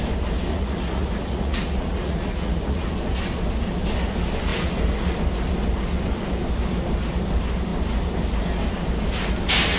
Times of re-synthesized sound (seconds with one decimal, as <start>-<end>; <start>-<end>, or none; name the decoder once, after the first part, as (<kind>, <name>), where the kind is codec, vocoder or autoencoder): 0.5-2.9 (vocoder, Vocos)